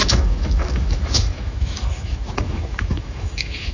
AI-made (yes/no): yes